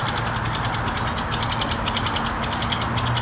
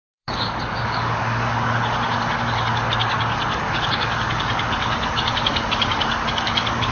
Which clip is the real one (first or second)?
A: first